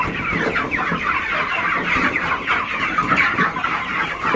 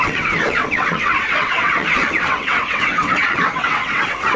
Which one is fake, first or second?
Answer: second